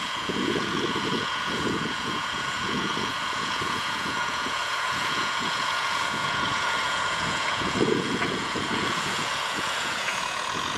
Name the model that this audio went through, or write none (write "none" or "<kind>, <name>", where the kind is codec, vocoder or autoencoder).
vocoder, Vocos